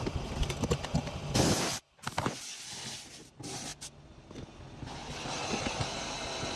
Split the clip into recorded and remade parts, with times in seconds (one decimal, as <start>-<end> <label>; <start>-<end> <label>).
0.0-6.6 recorded